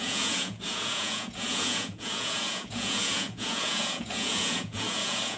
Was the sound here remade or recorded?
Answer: remade